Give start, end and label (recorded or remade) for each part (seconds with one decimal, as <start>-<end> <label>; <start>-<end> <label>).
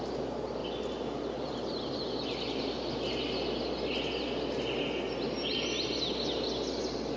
0.0-7.2 recorded